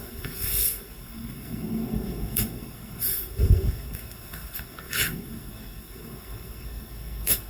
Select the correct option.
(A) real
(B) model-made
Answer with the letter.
B